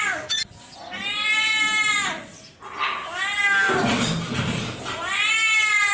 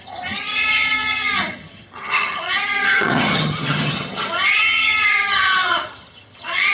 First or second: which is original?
first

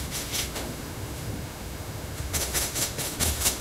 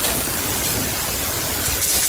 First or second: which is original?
second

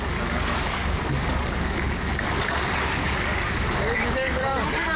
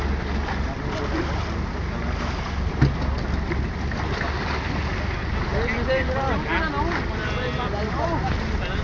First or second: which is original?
second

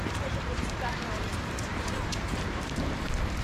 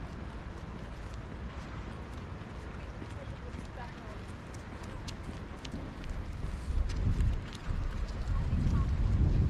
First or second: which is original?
second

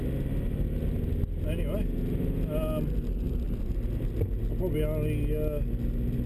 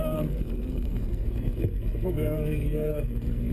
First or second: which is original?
first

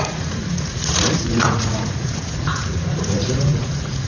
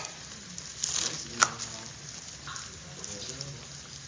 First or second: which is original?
second